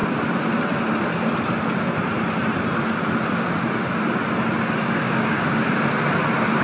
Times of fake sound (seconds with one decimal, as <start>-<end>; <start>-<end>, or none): 4.8-5.6

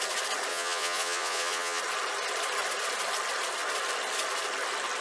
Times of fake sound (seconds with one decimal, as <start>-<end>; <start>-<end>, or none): 0.5-1.8

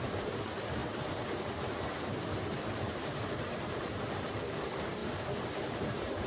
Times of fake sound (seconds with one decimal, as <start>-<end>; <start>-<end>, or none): 0.0-6.3

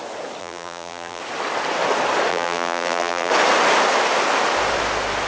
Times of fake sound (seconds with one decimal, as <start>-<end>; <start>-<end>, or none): 0.4-1.2; 2.3-3.3

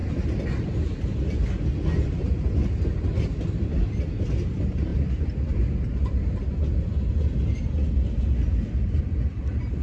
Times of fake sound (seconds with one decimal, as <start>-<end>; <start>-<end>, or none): none

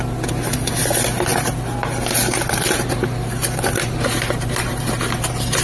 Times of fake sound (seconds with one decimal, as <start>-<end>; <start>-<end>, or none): none